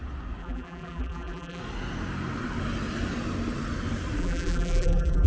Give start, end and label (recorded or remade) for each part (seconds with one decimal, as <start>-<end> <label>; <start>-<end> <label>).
0.0-0.4 recorded; 0.4-1.6 remade; 1.6-4.2 recorded; 4.2-5.3 remade